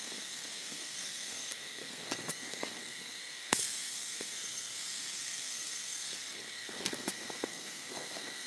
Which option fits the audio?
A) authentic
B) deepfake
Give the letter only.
B